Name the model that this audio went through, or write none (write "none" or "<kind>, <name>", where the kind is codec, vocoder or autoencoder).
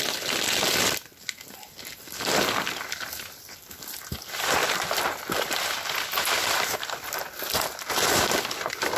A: none